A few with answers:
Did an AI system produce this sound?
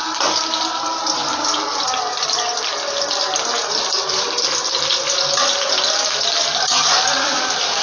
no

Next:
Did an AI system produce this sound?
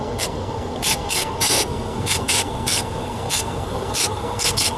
yes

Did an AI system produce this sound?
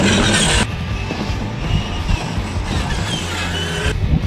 no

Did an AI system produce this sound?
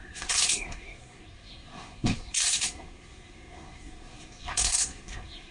yes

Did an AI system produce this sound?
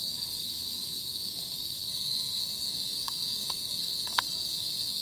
yes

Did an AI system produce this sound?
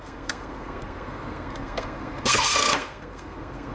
yes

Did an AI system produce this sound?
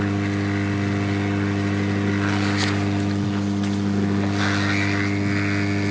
no